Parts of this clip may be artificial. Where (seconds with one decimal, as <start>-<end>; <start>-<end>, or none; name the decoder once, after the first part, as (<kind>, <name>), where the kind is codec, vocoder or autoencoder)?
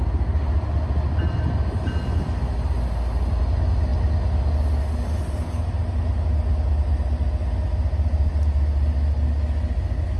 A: none